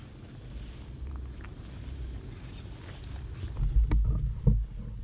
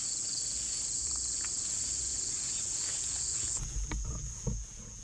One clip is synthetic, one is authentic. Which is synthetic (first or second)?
second